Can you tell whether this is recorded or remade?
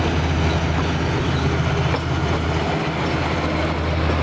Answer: recorded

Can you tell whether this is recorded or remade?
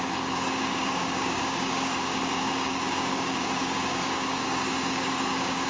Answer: remade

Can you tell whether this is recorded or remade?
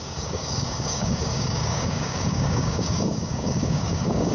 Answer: remade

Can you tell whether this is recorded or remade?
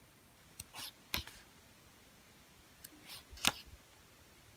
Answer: recorded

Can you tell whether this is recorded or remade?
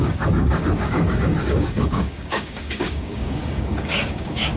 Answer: remade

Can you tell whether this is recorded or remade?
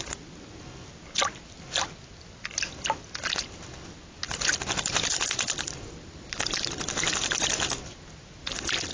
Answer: recorded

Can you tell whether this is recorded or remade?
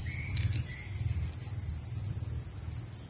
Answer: recorded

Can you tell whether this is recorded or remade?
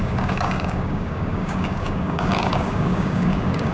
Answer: remade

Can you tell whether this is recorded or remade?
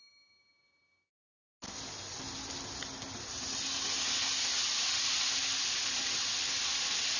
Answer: recorded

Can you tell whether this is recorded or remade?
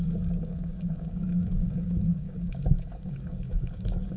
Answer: remade